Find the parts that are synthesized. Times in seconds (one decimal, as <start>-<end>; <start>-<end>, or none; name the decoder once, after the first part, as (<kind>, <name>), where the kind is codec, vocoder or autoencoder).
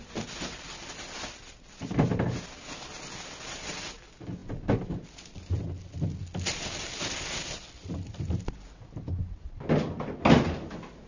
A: none